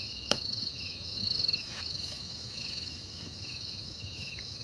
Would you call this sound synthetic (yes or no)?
yes